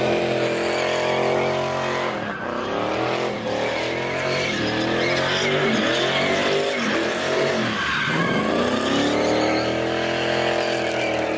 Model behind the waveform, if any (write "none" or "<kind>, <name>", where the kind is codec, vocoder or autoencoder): none